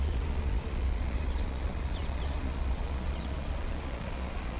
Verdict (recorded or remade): remade